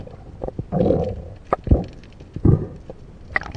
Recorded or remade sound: recorded